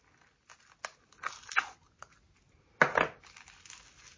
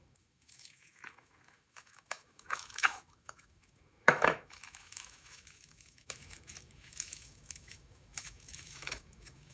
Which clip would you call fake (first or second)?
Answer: second